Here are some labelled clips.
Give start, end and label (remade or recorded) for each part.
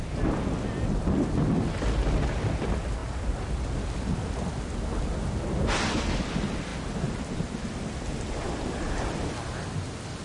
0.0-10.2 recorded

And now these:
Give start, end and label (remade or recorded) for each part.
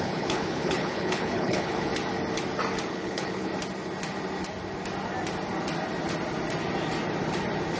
0.0-1.9 remade; 1.9-2.9 recorded; 2.9-3.5 remade; 3.5-7.8 recorded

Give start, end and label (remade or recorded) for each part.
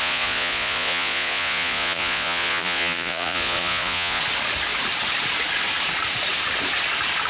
0.0-4.2 remade; 4.2-7.3 recorded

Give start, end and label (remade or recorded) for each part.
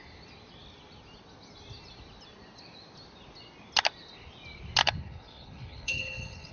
0.0-4.8 recorded; 4.8-6.5 remade